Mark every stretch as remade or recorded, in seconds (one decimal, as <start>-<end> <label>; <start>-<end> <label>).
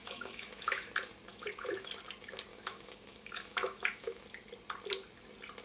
0.0-0.9 remade; 0.9-1.3 recorded; 1.3-1.9 remade; 1.9-2.5 recorded; 2.5-4.2 remade; 4.2-5.6 recorded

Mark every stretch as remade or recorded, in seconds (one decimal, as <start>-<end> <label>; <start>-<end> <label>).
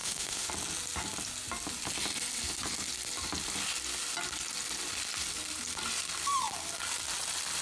0.0-0.5 remade; 0.5-7.6 recorded